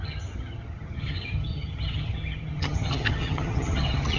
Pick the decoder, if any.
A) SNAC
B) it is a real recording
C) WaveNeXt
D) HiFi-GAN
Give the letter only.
D